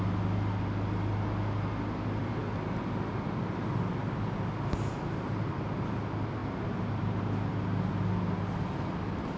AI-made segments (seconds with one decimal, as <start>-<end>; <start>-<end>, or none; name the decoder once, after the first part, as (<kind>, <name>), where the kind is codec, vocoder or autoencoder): none